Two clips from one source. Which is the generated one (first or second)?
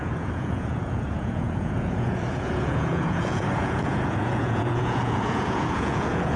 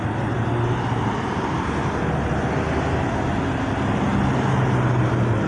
first